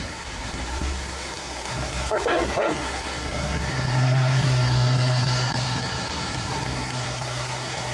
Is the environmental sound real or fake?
fake